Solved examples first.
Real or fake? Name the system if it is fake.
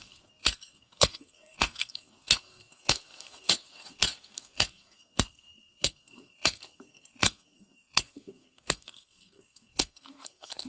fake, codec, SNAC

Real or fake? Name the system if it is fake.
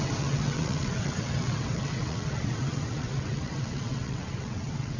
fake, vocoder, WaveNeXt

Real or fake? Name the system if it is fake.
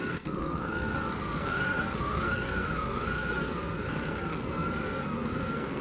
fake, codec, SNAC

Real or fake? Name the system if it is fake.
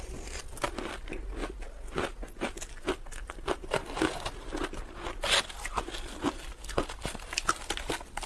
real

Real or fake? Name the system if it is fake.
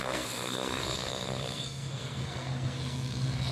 fake, codec, SNAC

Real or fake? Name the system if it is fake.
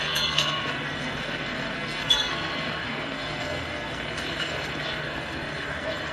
fake, codec, SNAC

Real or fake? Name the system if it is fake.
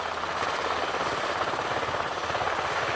real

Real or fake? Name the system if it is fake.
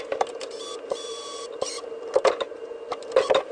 real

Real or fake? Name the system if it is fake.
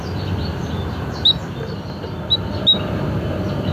real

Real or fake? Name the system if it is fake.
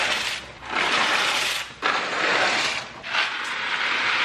real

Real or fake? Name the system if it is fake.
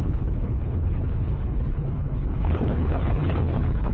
fake, codec, HILCodec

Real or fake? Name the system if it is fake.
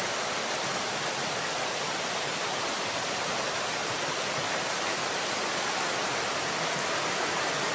real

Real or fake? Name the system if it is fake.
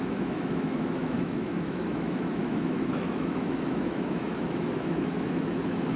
fake, autoencoder, DAC-VAE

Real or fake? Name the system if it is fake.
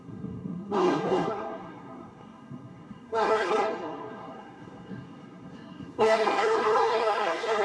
fake, codec, SNAC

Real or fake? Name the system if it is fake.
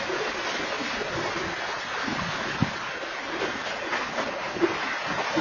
real